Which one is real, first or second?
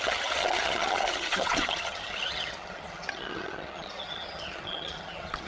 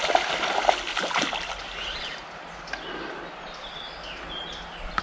second